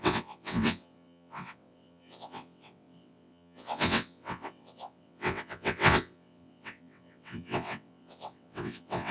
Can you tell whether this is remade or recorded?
remade